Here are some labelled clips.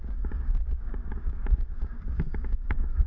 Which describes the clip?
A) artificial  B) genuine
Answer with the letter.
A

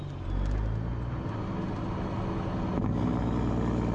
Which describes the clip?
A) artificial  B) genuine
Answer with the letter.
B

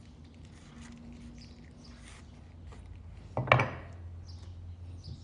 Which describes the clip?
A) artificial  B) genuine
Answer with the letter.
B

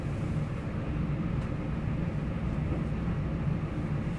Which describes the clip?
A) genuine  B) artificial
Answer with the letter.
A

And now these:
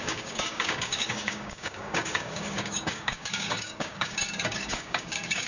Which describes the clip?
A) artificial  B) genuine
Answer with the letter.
A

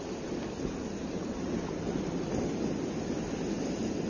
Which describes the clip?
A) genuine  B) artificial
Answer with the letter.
A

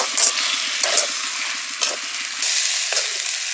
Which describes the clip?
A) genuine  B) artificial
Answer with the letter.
A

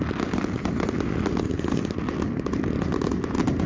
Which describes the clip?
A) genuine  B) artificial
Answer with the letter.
A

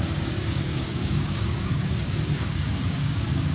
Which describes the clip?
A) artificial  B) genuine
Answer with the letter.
A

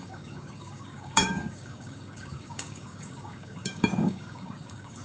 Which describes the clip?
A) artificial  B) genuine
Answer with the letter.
A